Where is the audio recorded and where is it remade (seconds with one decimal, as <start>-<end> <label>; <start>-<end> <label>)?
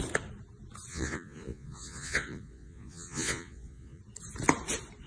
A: 0.0-0.9 recorded; 0.9-4.0 remade; 4.0-5.1 recorded